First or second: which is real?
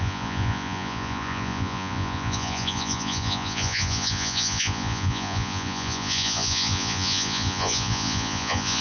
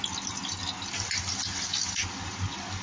second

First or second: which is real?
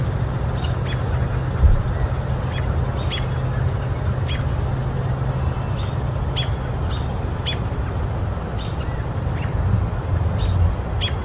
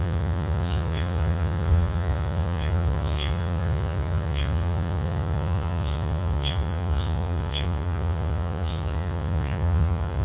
first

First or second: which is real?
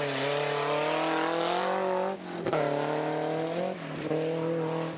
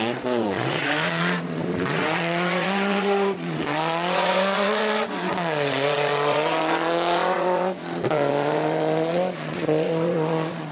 first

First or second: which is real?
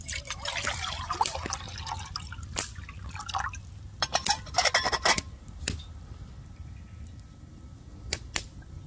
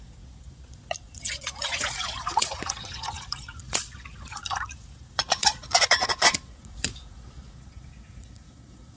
first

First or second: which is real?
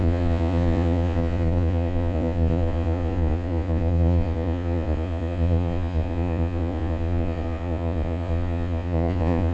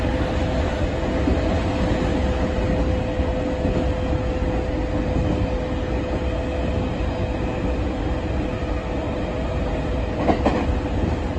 second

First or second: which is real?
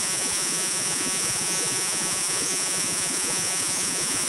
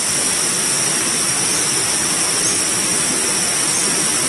second